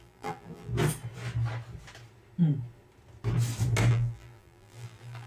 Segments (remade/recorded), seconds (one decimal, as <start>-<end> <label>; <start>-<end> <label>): 0.0-0.7 remade; 0.7-3.9 recorded; 3.9-5.3 remade